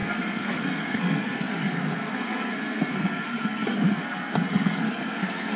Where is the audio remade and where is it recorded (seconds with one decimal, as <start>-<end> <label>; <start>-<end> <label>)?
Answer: 0.0-5.6 remade